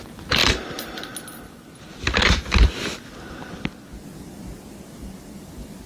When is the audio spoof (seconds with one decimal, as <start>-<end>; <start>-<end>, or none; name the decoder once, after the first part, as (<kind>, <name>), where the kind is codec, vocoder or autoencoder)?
none